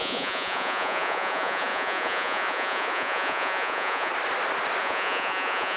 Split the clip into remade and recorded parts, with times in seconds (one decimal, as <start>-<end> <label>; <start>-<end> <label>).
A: 0.0-4.1 remade; 4.1-4.8 recorded; 4.8-5.8 remade